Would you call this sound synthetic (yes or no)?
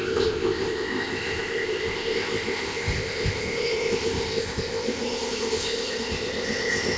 yes